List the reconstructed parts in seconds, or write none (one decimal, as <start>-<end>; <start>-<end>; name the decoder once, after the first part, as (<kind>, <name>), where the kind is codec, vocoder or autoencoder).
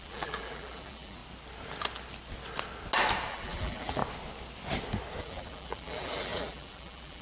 0.0-1.2 (vocoder, BigVGAN v2); 3.3-4.0; 5.2-7.2